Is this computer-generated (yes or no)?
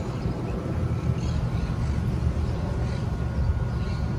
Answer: no